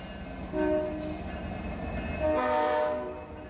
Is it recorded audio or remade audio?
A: recorded